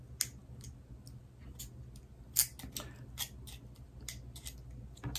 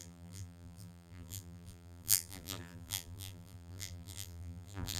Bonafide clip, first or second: first